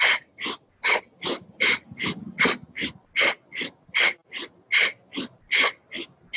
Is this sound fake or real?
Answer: real